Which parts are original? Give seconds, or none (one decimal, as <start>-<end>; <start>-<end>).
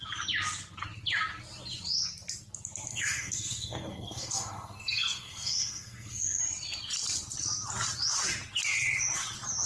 0.0-2.9; 6.4-9.7